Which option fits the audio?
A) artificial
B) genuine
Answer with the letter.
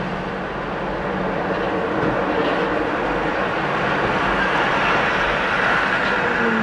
B